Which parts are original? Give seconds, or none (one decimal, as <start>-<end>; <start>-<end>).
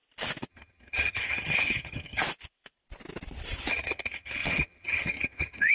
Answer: 0.0-0.5; 2.2-3.7